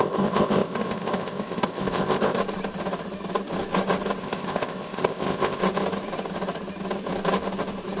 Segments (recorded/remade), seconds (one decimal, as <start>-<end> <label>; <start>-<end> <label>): 0.0-2.4 remade; 2.4-4.2 recorded; 4.2-5.6 remade; 5.6-8.0 recorded